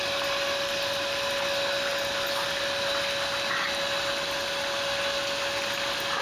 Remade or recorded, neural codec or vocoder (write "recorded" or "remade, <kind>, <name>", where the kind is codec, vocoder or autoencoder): recorded